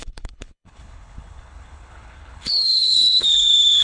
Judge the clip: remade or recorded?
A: remade